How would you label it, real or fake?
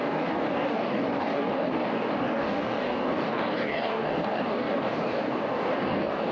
fake